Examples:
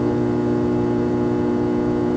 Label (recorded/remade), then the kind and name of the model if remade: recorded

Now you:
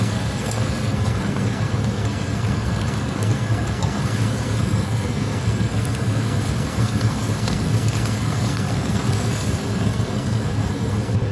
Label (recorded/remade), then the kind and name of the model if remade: remade, codec, SNAC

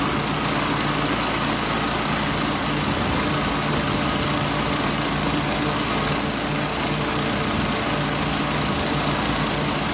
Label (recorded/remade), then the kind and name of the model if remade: recorded